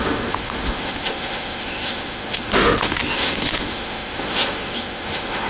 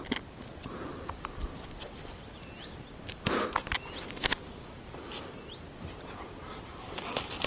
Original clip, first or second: second